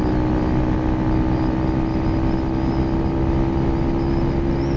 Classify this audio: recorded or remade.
recorded